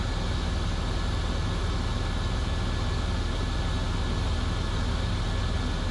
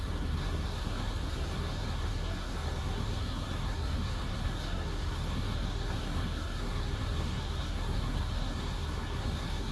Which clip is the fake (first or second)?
second